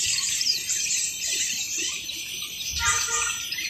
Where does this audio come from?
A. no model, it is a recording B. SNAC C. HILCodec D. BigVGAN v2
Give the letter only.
D